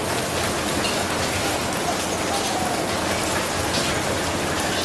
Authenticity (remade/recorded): recorded